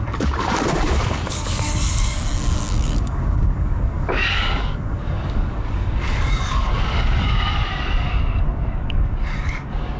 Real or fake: fake